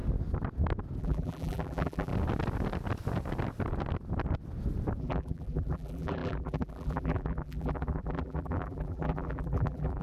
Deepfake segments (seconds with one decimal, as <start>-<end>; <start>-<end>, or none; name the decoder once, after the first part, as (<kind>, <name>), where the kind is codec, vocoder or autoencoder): 1.0-2.1 (vocoder, BigVGAN v2); 5.0-10.0